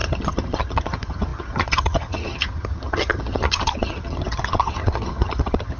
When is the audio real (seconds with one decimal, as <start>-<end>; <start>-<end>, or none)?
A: none